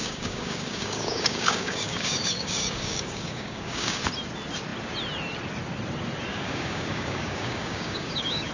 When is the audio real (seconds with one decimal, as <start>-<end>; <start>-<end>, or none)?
4.0-6.3